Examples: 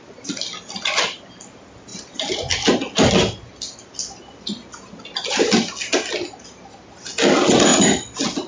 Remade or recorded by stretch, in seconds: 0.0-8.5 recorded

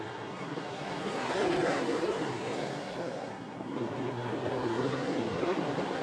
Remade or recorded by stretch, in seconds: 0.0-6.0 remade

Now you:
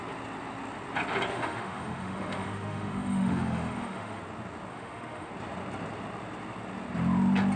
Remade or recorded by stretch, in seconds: 0.0-1.3 recorded; 1.3-4.2 remade; 4.2-4.7 recorded; 4.7-5.3 remade; 5.3-7.6 recorded